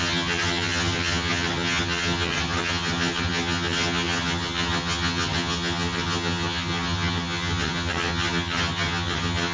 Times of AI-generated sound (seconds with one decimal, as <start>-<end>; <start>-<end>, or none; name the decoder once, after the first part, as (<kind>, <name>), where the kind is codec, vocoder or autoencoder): 0.0-9.5 (vocoder, HiFi-GAN)